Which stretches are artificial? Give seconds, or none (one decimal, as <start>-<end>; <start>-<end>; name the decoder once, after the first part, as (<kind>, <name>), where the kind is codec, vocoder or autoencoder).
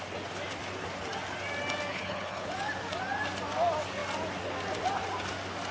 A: 1.9-2.5 (codec, HILCodec)